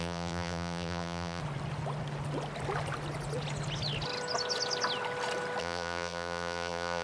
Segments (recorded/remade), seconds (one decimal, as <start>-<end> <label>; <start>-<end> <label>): 0.0-1.4 remade; 1.4-5.6 recorded; 5.6-7.0 remade